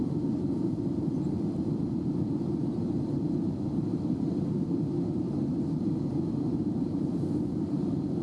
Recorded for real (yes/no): no